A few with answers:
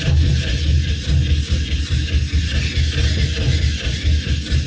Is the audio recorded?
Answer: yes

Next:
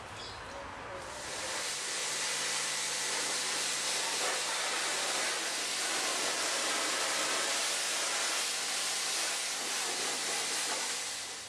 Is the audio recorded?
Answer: yes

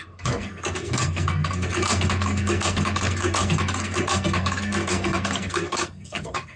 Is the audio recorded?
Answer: no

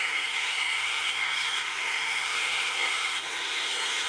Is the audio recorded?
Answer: no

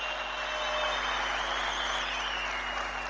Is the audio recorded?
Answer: yes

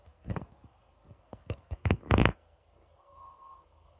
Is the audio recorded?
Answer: no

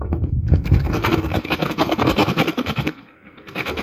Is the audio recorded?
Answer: no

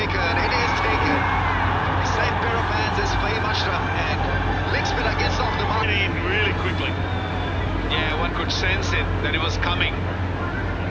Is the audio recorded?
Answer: yes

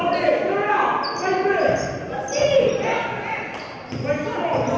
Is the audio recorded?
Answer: yes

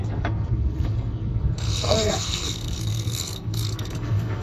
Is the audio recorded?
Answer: no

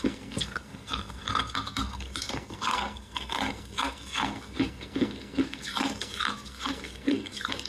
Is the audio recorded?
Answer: no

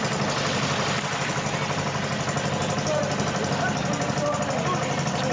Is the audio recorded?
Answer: yes